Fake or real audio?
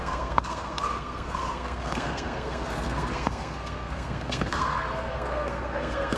fake